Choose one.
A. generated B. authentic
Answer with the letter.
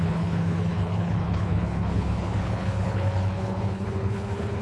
A